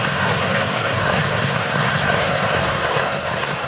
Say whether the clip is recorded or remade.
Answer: remade